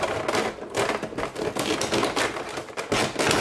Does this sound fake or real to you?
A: real